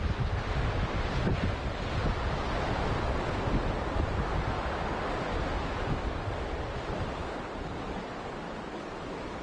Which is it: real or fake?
real